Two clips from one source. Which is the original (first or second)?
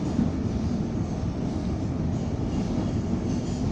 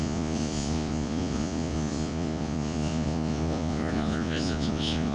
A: first